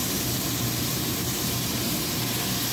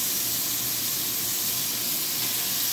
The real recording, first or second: second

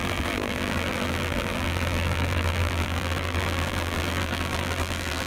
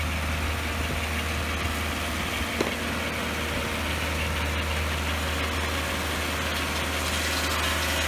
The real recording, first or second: second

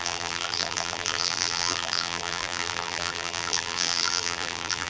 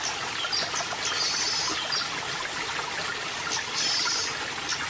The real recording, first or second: second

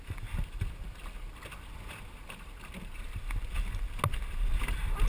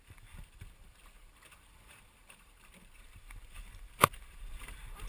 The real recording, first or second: first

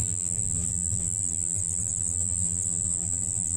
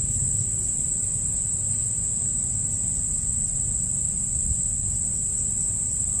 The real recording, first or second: second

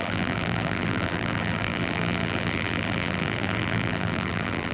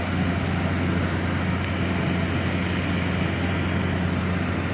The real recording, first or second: second